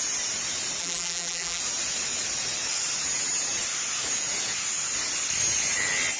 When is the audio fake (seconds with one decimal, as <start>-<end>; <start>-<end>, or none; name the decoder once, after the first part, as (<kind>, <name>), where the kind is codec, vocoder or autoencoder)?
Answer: 0.8-1.6 (vocoder, BigVGAN v2)